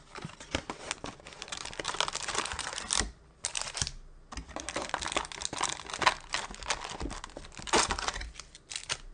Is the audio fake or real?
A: real